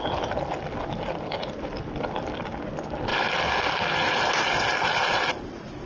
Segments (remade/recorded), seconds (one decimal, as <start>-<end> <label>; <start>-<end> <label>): 0.0-1.4 recorded; 1.4-2.6 remade; 2.6-3.1 recorded; 3.1-3.7 remade; 3.7-5.9 recorded